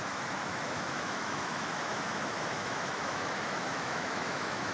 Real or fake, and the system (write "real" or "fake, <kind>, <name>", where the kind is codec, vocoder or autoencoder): fake, autoencoder, DAC-VAE